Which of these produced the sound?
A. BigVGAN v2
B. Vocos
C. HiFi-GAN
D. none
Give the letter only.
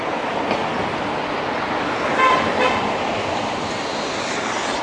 D